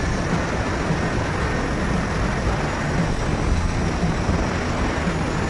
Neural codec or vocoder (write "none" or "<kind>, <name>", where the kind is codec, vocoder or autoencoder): none